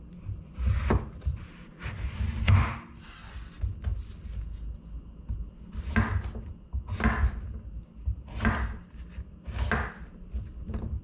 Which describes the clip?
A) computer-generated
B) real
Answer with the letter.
B